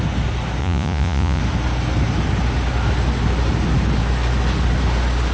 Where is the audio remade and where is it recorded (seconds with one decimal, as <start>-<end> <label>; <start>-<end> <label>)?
0.0-0.6 recorded; 0.6-1.4 remade; 1.4-5.3 recorded